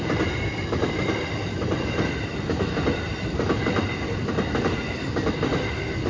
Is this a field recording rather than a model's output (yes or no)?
no